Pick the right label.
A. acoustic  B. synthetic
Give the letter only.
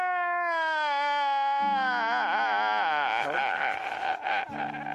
A